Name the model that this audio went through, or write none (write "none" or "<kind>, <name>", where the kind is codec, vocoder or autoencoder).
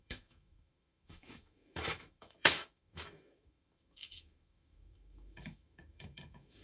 autoencoder, DAC-VAE